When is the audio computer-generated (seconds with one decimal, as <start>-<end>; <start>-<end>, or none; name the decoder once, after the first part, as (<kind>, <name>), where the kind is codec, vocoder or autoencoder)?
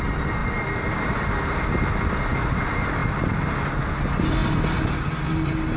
none